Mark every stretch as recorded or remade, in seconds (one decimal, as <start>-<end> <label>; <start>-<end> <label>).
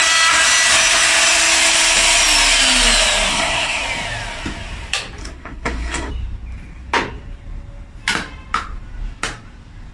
0.0-3.3 recorded; 3.3-3.8 remade; 3.8-5.2 recorded; 5.2-6.1 remade; 6.1-9.9 recorded